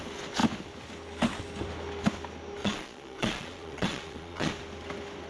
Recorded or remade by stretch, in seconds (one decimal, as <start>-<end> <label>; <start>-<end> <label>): 0.0-2.6 recorded; 2.6-4.5 remade; 4.5-5.3 recorded